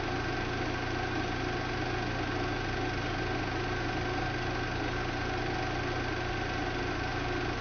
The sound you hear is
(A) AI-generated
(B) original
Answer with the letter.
B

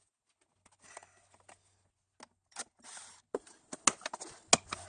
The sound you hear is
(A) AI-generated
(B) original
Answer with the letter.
B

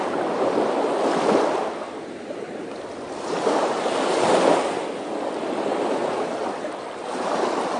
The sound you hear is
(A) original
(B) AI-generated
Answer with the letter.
A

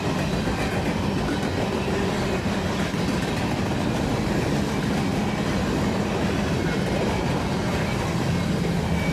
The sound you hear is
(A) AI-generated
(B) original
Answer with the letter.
B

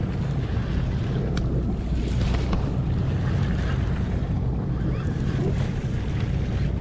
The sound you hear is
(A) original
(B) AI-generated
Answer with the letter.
A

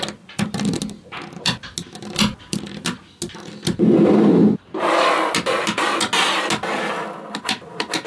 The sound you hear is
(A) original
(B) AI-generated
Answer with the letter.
A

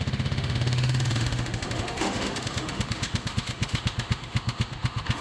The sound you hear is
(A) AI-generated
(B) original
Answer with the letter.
A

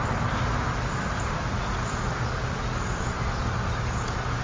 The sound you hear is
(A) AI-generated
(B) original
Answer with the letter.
B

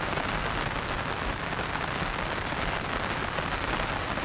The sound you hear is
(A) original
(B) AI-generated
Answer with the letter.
A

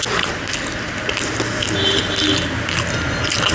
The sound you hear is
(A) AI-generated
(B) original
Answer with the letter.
B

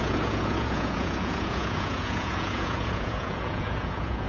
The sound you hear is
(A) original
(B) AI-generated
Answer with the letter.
B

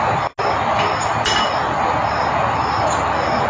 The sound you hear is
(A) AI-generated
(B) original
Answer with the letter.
B